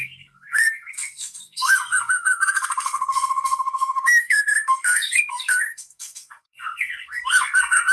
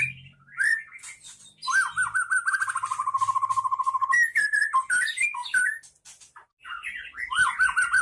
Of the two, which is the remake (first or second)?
first